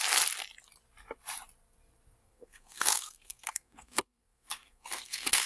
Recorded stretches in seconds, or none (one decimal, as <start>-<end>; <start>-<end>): 0.0-2.2

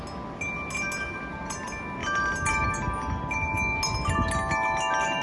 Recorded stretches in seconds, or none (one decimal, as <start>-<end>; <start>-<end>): 0.0-5.2